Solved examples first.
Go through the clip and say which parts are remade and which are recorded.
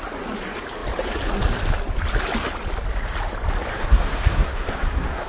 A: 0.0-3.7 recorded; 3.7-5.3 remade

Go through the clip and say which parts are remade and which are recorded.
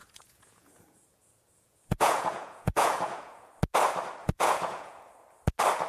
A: 0.0-3.5 remade; 3.5-4.2 recorded; 4.2-5.1 remade; 5.1-5.9 recorded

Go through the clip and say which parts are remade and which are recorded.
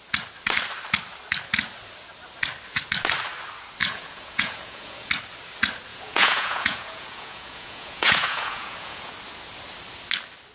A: 0.0-3.8 recorded; 3.8-5.1 remade; 5.1-5.9 recorded; 5.9-9.1 remade; 9.1-10.5 recorded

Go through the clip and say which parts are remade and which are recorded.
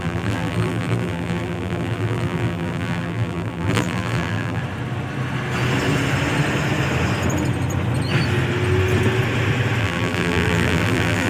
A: 0.0-4.6 remade; 4.6-9.8 recorded; 9.8-11.3 remade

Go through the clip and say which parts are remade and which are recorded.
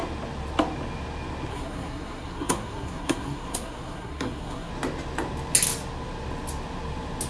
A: 0.0-1.5 recorded; 1.5-4.7 remade; 4.7-7.3 recorded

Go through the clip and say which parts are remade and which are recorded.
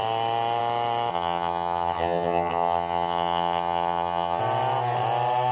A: 0.0-1.1 recorded; 1.1-4.4 remade; 4.4-5.5 recorded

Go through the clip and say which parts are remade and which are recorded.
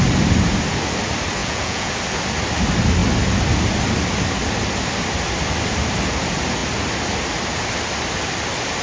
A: 0.0-1.4 recorded; 1.4-1.9 remade; 1.9-8.8 recorded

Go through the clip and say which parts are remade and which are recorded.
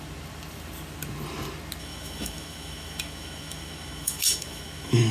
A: 0.0-1.8 recorded; 1.8-5.1 remade